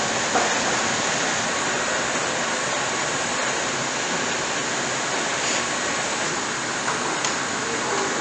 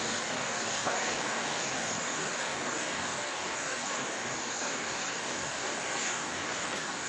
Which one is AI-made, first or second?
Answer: second